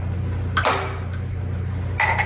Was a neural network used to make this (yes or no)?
no